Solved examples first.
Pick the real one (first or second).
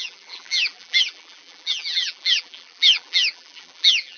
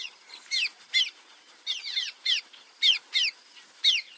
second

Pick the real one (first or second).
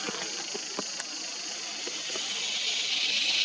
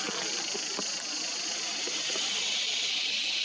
first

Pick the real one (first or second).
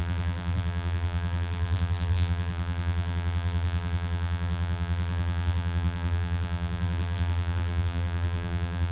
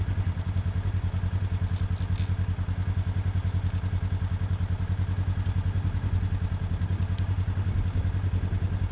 second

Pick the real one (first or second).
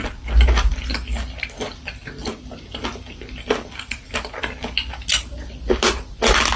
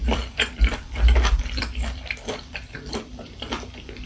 first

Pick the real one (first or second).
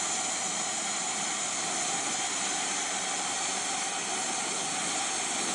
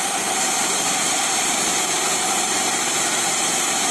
first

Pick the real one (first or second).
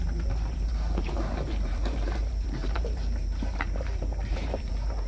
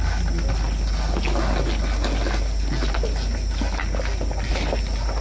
second